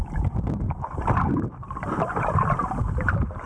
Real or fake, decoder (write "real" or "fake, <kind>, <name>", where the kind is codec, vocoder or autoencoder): real